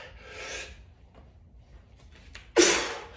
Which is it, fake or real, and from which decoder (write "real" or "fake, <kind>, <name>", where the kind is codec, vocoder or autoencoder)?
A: real